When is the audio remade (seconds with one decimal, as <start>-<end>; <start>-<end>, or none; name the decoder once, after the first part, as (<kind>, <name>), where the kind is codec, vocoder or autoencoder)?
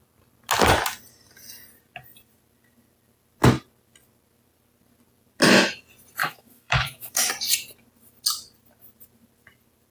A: 6.2-7.3 (autoencoder, DAC-VAE)